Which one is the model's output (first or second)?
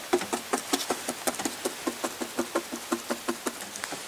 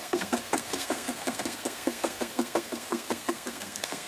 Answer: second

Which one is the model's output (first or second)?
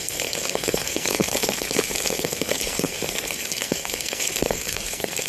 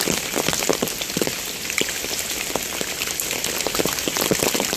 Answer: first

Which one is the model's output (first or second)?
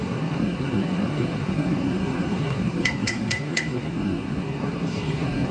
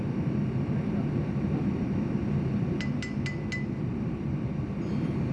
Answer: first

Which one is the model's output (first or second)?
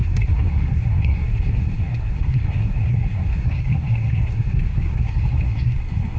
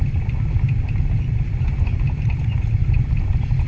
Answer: first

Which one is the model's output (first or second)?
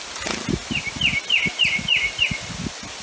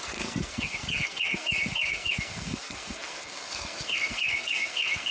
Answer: second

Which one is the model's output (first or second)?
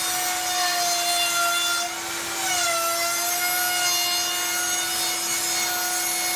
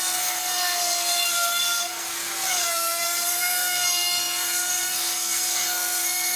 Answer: second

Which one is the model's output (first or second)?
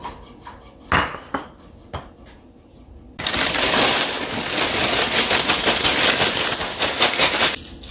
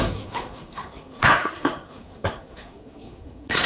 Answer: second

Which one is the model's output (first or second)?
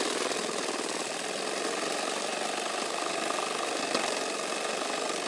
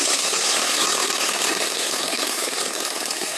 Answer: second